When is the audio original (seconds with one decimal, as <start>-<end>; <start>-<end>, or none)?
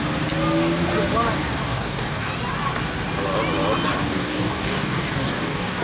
0.0-1.6; 2.3-3.9